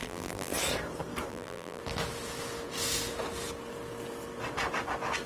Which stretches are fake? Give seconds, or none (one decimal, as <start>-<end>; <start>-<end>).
0.0-0.5; 1.3-1.8